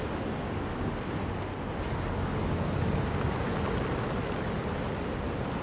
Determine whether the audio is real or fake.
real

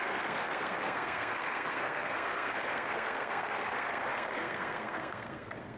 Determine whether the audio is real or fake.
fake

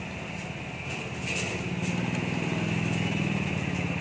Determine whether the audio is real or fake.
real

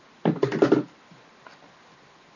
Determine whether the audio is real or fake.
real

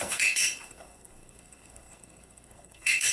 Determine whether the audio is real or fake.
fake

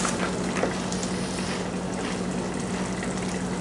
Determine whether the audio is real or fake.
real